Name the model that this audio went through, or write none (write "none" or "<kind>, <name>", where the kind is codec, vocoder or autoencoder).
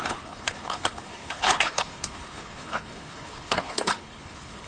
codec, HILCodec